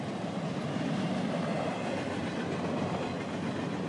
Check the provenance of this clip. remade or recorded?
recorded